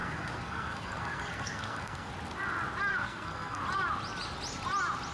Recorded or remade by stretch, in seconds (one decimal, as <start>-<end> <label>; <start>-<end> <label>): 0.0-2.1 remade; 2.1-2.9 recorded; 2.9-3.6 remade; 3.6-5.1 recorded